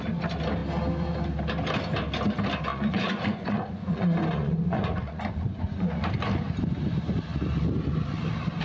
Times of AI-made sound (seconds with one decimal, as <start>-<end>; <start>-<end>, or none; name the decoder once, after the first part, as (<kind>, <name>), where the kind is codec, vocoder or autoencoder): 2.7-6.1 (vocoder, Vocos)